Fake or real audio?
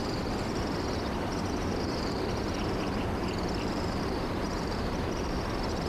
fake